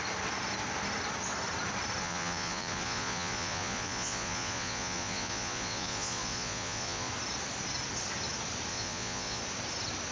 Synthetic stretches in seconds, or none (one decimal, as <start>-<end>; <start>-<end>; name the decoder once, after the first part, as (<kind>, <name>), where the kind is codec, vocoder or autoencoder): 2.0-7.1 (vocoder, Vocos); 8.7-9.4